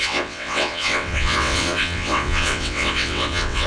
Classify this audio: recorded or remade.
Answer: remade